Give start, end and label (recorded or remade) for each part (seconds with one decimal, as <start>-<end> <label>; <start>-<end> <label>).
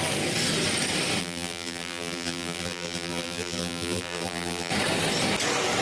0.0-1.2 recorded; 1.2-4.7 remade; 4.7-5.8 recorded